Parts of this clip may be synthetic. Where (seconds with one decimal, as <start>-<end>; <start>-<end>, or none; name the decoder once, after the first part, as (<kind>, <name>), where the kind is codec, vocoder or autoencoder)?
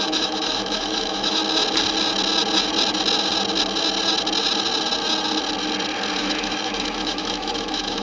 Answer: 0.0-1.4 (autoencoder, DAC-VAE); 6.2-8.0